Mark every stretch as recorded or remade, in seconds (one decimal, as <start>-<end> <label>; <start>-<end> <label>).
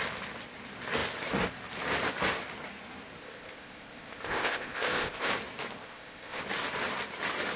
0.0-3.2 recorded; 3.2-5.3 remade; 5.3-5.8 recorded; 5.8-6.4 remade; 6.4-7.6 recorded